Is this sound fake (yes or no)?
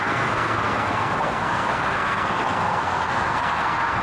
yes